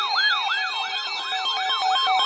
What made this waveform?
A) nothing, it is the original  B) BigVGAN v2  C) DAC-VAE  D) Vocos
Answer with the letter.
A